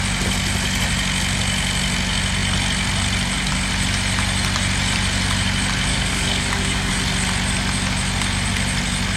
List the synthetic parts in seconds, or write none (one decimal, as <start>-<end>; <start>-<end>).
5.9-6.9